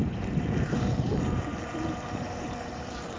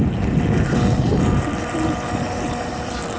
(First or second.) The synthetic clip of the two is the first